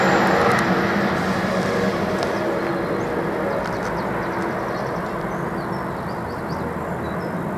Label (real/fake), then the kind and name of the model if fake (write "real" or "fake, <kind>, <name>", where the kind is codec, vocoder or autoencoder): real